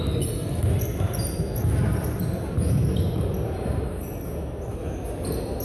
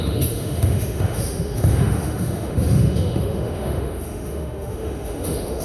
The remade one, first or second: second